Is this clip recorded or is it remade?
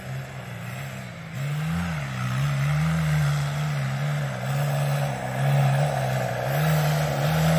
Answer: recorded